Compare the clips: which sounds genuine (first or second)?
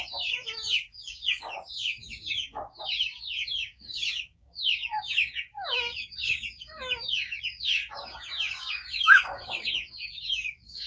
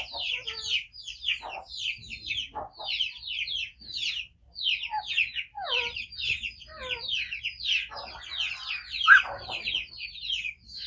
second